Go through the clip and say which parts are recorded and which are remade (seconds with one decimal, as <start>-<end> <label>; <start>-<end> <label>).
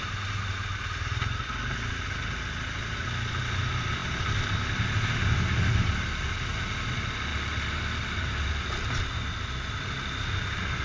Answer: 0.0-10.8 recorded